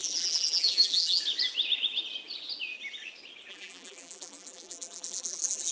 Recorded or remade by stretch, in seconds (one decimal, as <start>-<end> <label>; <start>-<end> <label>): 0.0-1.2 remade; 1.2-3.5 recorded; 3.5-5.7 remade